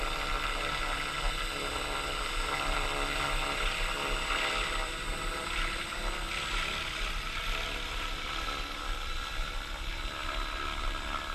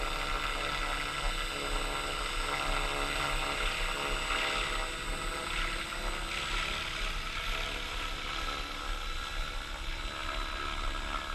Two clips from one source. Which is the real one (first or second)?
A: second